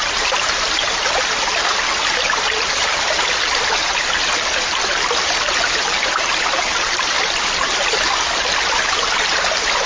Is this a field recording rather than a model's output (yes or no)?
yes